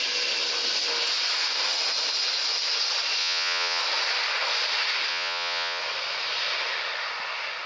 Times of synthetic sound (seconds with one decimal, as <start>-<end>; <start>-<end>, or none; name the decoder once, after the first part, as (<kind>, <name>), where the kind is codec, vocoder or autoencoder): 3.2-3.8 (vocoder, Vocos); 5.1-5.8